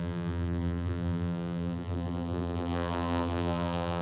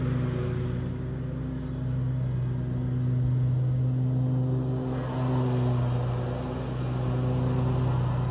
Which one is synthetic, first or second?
first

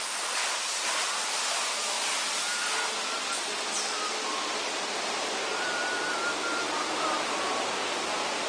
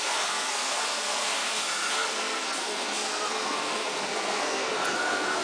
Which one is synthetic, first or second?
second